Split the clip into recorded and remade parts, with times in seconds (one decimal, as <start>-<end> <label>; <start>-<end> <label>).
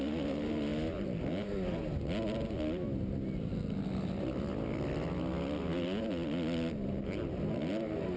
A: 0.0-8.2 recorded